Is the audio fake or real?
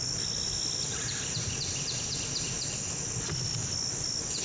real